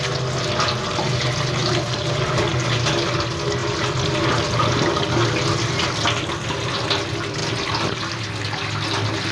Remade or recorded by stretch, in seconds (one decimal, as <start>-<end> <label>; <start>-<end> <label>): 0.0-1.6 recorded; 1.6-2.5 remade; 2.5-9.3 recorded

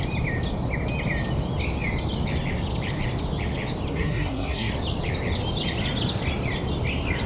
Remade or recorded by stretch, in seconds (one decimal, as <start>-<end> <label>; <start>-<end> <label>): 0.0-3.9 recorded; 3.9-4.7 remade; 4.7-7.3 recorded